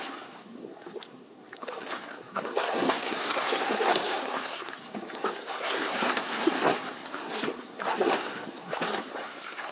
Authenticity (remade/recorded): remade